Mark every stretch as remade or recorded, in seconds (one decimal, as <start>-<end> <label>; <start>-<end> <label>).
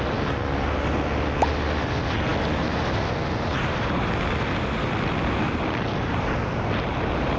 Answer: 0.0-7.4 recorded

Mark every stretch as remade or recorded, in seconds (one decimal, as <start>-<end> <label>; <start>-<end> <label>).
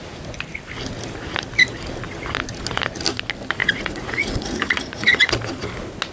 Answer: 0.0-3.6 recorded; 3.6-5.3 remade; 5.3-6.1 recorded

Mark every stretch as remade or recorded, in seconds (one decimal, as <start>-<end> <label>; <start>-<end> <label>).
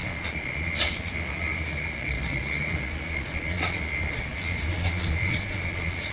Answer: 0.0-6.1 remade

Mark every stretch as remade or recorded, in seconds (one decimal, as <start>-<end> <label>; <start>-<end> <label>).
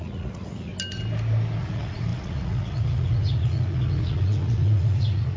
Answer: 0.0-0.7 remade; 0.7-1.6 recorded; 1.6-5.4 remade